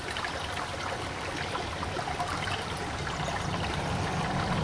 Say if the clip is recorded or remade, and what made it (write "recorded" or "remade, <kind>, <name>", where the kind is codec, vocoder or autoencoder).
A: recorded